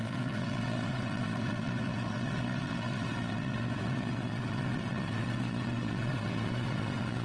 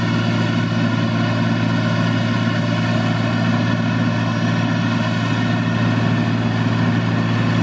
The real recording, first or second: second